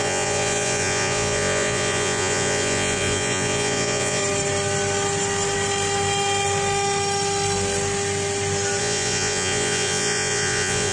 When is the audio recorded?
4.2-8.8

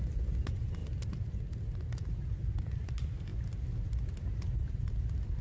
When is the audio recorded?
0.0-5.4

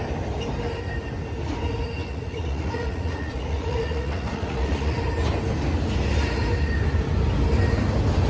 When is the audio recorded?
0.0-2.0; 5.0-8.3